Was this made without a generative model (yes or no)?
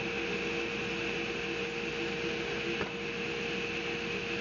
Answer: yes